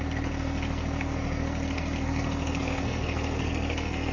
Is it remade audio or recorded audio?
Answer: remade